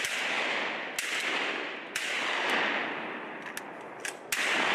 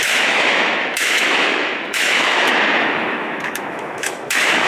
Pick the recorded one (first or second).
first